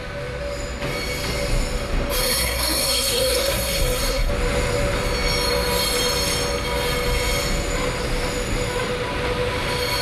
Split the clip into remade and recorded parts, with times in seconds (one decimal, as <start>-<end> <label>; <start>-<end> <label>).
0.0-2.2 recorded; 2.2-4.3 remade; 4.3-10.0 recorded